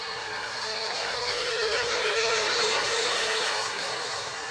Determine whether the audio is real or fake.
fake